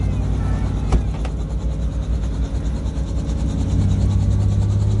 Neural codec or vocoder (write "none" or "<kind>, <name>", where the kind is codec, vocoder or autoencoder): none